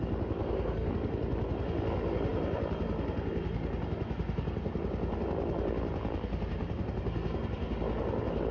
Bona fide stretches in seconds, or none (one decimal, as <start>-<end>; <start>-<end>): 0.0-0.4; 0.9-8.5